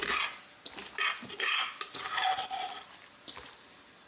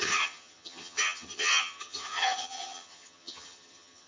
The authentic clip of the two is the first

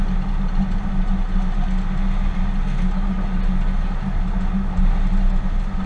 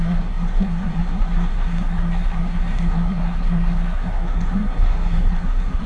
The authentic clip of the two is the first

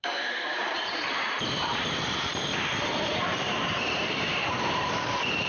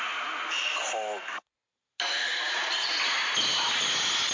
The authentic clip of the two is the second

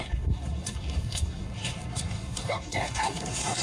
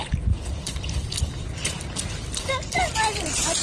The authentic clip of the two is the second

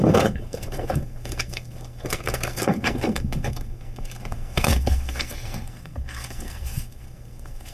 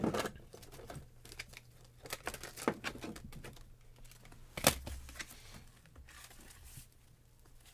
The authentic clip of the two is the second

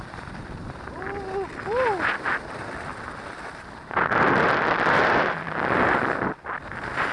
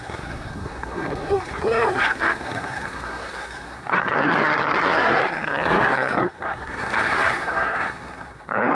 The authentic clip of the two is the first